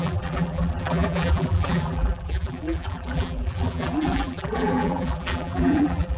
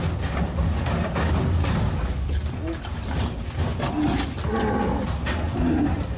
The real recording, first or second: second